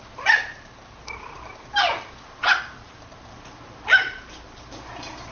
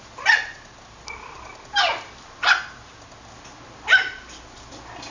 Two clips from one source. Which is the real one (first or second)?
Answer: second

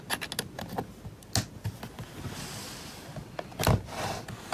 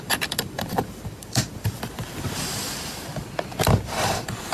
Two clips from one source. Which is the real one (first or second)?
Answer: first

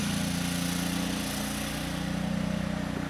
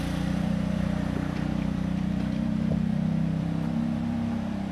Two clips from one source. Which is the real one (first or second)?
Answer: first